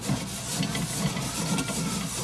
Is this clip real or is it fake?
real